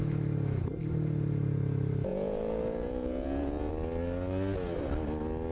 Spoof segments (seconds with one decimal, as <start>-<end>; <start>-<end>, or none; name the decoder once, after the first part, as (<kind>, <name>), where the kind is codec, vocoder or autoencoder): 2.1-3.7 (vocoder, Vocos)

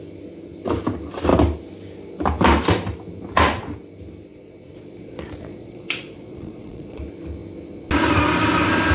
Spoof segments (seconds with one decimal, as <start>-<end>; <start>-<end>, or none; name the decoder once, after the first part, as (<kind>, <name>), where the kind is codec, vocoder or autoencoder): 4.3-7.0 (vocoder, Vocos)